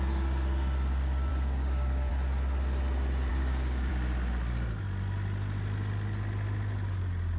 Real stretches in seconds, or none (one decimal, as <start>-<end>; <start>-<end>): 0.0-1.3; 2.1-3.3; 3.9-7.4